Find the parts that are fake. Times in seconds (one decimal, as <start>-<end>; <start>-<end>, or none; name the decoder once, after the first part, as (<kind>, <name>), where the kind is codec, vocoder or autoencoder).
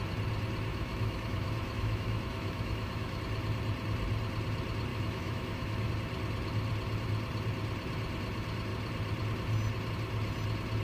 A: 0.7-3.2 (autoencoder, DAC-VAE); 4.9-5.9